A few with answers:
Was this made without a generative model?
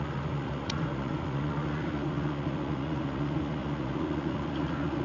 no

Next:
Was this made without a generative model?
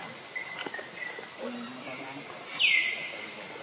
yes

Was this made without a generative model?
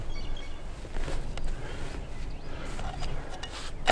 yes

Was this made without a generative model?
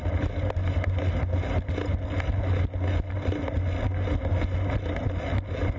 yes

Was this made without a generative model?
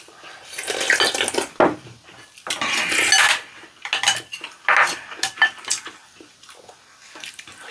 yes